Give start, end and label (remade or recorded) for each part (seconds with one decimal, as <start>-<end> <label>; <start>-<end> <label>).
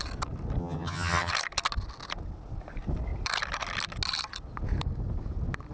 0.0-0.6 recorded; 0.6-1.3 remade; 1.3-5.7 recorded